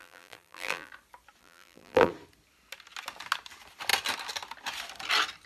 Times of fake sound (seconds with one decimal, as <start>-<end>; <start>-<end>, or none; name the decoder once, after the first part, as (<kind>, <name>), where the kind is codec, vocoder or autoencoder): 0.0-0.9 (vocoder, BigVGAN v2); 1.4-2.1